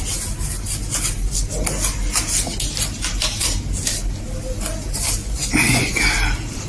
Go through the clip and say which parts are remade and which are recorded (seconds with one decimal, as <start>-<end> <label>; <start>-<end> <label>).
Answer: 0.0-5.2 recorded; 5.2-6.0 remade; 6.0-6.7 recorded